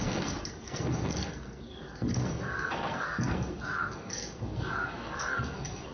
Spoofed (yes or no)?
yes